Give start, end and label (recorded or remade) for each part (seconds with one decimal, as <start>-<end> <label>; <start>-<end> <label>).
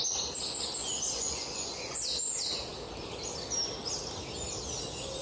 0.0-0.8 recorded; 0.8-2.0 remade; 2.0-5.2 recorded